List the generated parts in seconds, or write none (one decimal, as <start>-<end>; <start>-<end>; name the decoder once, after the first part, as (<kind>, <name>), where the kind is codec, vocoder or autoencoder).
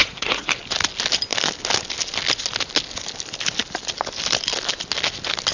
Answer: 0.0-0.5 (vocoder, Vocos)